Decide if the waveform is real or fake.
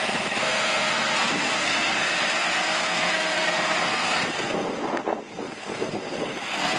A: fake